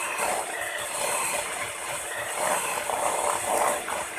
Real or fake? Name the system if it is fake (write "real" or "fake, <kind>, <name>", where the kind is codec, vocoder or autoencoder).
fake, vocoder, BigVGAN v2